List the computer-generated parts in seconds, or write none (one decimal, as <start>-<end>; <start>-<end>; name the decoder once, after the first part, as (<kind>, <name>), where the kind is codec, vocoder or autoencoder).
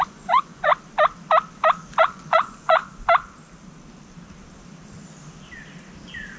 0.0-0.7 (vocoder, Vocos); 2.0-2.8